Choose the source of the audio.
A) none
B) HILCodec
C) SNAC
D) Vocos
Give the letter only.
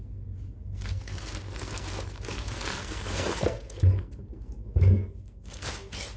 C